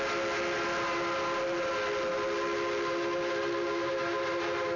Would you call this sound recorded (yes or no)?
yes